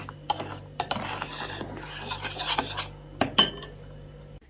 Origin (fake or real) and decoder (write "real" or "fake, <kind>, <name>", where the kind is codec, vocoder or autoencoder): real